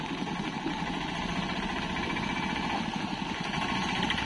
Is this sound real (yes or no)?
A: yes